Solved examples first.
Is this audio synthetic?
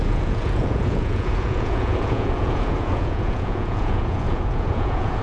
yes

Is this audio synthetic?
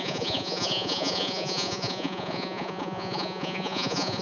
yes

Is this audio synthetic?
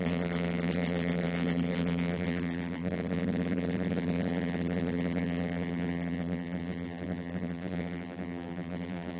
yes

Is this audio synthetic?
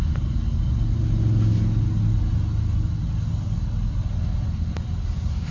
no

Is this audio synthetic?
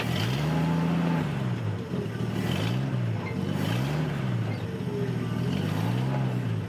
no